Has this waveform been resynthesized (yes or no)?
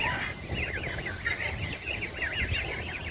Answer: yes